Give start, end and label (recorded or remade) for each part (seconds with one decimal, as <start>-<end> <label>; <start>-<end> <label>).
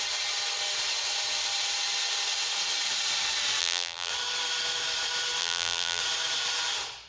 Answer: 0.0-3.6 recorded; 3.6-4.1 remade; 4.1-5.4 recorded; 5.4-6.0 remade; 6.0-7.1 recorded